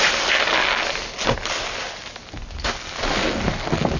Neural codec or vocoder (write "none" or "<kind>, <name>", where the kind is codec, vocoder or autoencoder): none